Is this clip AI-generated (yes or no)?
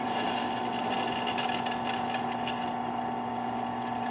no